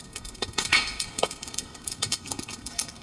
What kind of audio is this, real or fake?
fake